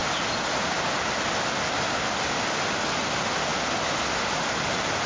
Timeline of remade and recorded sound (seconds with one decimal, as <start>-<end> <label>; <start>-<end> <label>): 0.0-5.1 recorded